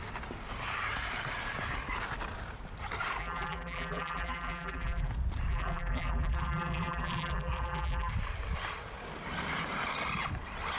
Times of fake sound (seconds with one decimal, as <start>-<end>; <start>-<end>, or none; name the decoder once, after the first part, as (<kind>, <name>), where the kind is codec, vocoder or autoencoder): 3.2-5.1 (vocoder, BigVGAN v2); 5.5-8.1